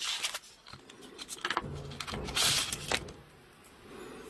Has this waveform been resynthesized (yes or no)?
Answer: no